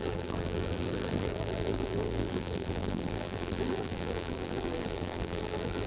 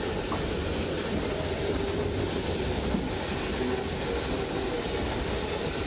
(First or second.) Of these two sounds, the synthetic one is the first